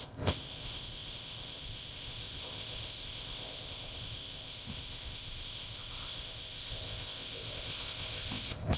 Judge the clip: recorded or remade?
remade